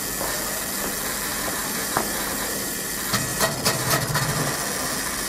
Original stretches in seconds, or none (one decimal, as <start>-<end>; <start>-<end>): 0.0-1.3; 2.9-3.3; 4.4-5.3